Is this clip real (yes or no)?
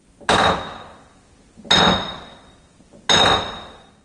yes